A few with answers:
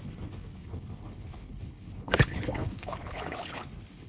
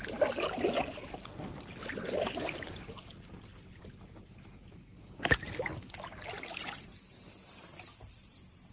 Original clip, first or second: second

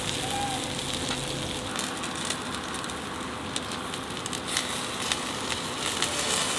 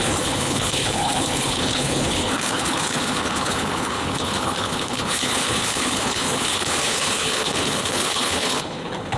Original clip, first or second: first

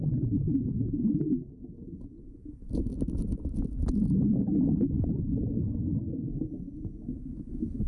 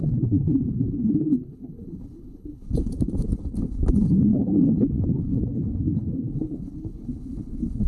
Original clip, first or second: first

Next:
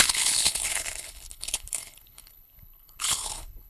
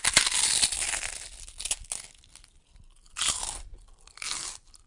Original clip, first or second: second